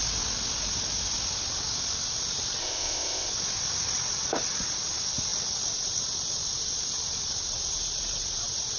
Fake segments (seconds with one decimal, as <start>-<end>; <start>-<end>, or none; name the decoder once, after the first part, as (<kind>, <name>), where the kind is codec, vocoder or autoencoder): 2.6-3.3 (codec, ZipCodec)